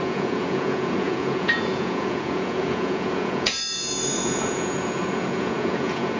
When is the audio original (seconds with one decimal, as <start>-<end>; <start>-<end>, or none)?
none

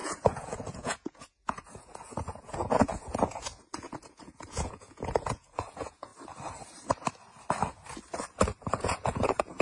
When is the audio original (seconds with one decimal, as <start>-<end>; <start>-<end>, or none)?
6.1-8.6

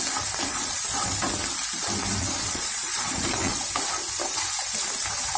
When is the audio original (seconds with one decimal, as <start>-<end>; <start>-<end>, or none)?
0.0-0.5; 1.1-2.2; 3.6-5.4

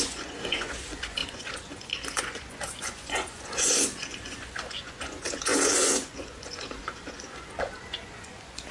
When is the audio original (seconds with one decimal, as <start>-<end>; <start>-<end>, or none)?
none

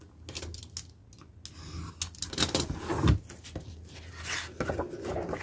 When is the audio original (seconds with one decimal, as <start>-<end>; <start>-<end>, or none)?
0.0-5.4

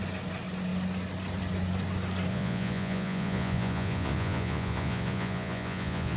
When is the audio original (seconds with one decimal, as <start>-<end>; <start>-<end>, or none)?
0.0-2.3

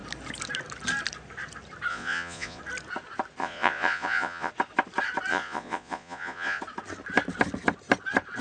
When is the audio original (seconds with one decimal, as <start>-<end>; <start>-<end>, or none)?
0.0-1.9; 2.6-3.4; 4.5-5.3; 6.6-8.4

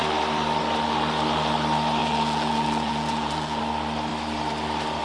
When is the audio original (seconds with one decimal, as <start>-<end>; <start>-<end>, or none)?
0.0-2.0; 3.6-5.0